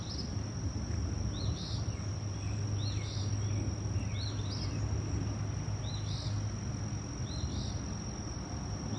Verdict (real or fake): real